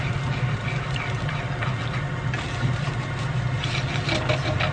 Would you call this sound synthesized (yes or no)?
no